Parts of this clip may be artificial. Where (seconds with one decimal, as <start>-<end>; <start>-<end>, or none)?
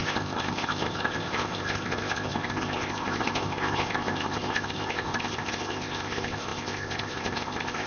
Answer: 0.0-7.9